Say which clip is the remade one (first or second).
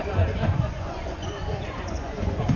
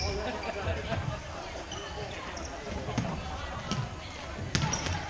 first